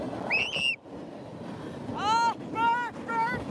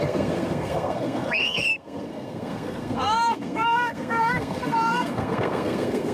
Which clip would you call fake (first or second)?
second